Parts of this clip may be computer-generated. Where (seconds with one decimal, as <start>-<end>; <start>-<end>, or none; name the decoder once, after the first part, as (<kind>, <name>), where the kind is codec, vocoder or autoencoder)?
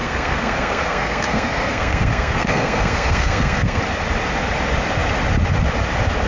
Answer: 0.0-3.8 (codec, SNAC)